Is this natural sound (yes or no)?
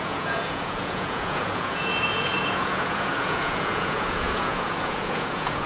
no